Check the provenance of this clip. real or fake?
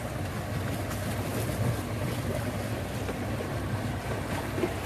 real